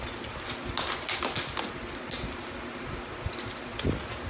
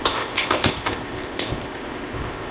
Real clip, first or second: first